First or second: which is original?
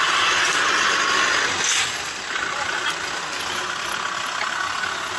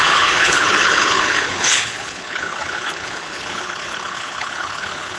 first